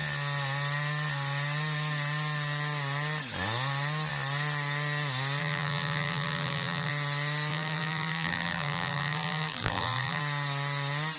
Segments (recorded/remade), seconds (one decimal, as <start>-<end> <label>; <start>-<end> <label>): 0.0-5.4 recorded; 5.4-6.9 remade; 6.9-7.5 recorded; 7.5-10.2 remade; 10.2-11.2 recorded